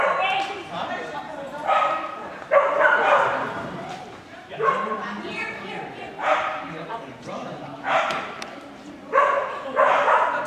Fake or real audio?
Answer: fake